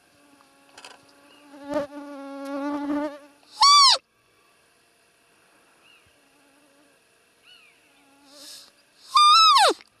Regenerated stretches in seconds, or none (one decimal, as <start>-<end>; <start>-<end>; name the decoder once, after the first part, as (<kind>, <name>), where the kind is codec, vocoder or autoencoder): 3.9-4.5 (vocoder, Vocos)